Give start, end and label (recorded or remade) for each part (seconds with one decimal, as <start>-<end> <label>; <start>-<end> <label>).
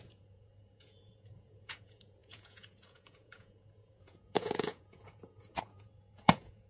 0.0-6.7 remade